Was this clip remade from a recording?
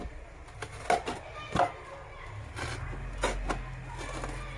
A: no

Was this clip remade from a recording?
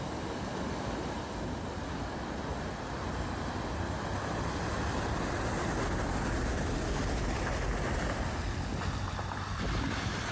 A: no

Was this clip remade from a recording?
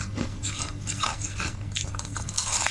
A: yes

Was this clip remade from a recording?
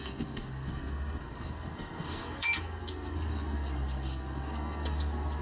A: yes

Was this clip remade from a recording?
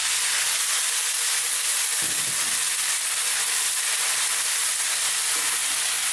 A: no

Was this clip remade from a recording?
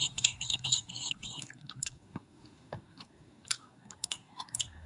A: yes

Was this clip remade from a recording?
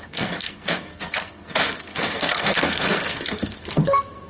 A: yes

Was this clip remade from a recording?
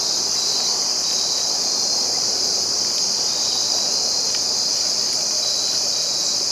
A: no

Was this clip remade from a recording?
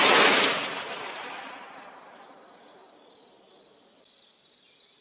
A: no